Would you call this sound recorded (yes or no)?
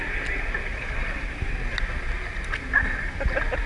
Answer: yes